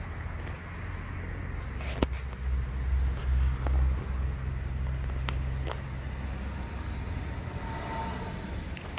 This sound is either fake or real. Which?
real